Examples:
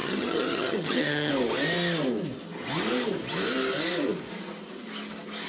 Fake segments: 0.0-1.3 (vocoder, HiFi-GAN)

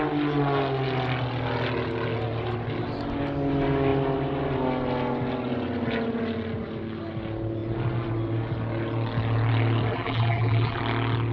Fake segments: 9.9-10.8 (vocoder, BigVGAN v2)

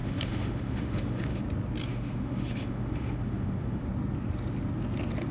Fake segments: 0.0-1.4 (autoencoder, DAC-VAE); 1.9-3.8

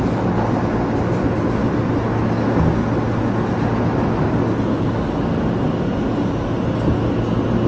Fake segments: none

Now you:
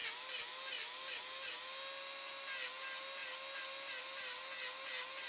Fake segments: none

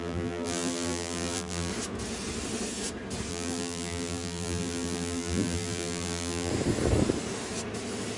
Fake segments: 0.0-1.7 (vocoder, BigVGAN v2); 3.3-6.5

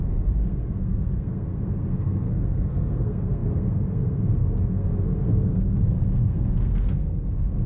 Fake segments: 0.0-7.7 (codec, SNAC)